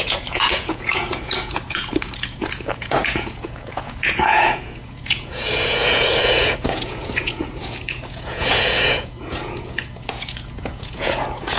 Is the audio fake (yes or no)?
yes